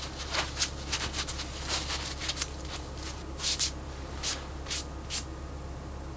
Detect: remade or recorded recorded